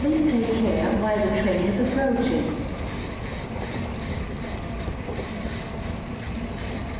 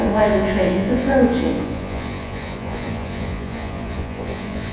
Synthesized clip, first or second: second